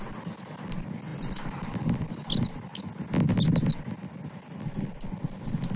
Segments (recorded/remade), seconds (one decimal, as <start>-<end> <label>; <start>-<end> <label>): 0.0-5.8 recorded